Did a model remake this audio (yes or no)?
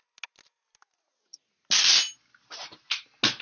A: no